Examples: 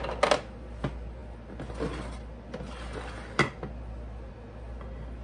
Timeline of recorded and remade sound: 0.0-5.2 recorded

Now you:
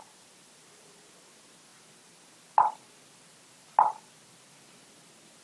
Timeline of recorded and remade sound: 0.0-5.4 recorded